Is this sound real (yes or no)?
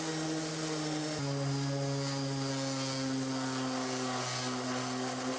yes